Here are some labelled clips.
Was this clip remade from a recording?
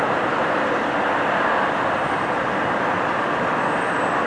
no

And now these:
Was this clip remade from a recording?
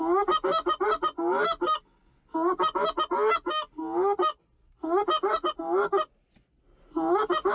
no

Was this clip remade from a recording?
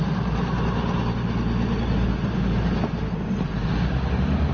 no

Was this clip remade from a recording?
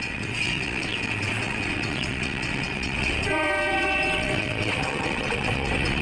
yes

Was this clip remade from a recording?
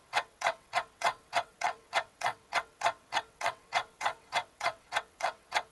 yes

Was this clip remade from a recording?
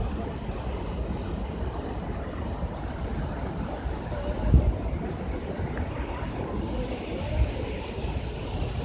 no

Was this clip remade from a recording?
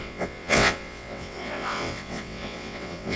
yes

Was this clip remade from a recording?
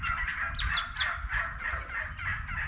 no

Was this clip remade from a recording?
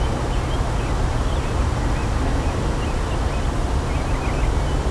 no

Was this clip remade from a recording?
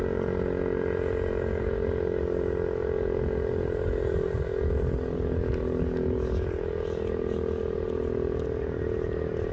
no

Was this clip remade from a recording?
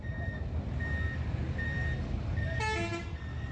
no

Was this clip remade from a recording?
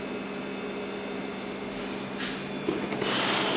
no